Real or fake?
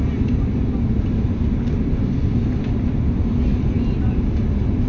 real